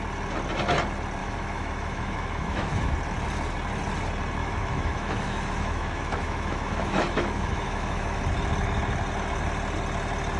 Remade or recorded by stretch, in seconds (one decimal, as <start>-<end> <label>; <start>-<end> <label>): 0.0-1.2 recorded; 1.2-2.9 remade; 2.9-4.4 recorded; 4.4-8.2 remade; 8.2-10.4 recorded